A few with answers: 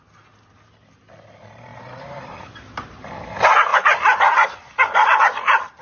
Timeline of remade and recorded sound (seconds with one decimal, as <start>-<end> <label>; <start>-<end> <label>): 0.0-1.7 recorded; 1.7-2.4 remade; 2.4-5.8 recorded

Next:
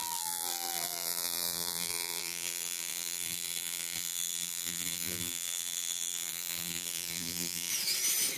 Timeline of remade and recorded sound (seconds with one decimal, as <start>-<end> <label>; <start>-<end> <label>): 0.0-7.7 remade; 7.7-8.4 recorded

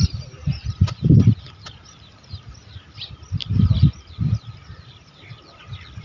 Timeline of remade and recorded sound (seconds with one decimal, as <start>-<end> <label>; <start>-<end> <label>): 0.0-0.4 remade; 0.4-1.5 recorded; 1.5-2.6 remade; 2.6-6.0 recorded

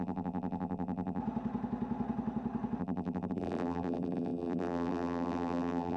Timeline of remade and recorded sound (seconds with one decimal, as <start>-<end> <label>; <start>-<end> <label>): 0.0-1.2 remade; 1.2-2.8 recorded; 2.8-6.0 remade